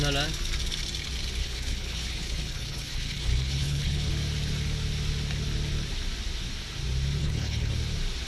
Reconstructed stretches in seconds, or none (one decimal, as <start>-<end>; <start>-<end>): 1.4-4.1; 7.2-7.7

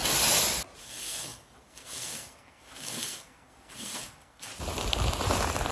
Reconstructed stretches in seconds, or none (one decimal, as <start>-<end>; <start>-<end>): 0.8-4.5

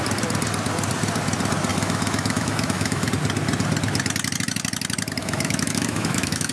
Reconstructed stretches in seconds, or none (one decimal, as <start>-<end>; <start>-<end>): 1.7-3.1; 5.2-6.5